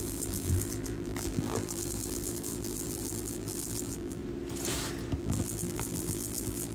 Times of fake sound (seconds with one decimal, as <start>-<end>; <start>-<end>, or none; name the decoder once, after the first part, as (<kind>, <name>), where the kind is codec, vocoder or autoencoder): 0.0-4.2 (vocoder, BigVGAN v2); 5.2-6.7